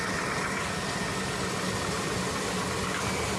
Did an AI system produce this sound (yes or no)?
no